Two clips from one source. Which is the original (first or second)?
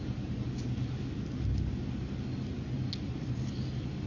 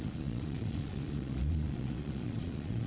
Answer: first